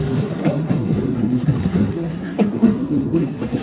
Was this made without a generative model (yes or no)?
no